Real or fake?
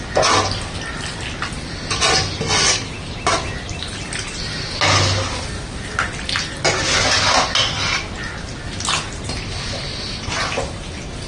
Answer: real